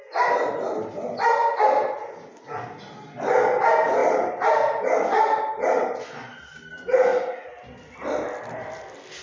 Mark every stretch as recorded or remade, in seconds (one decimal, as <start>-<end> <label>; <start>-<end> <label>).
0.0-4.0 recorded; 4.0-6.0 remade; 6.0-7.1 recorded; 7.1-8.7 remade; 8.7-9.2 recorded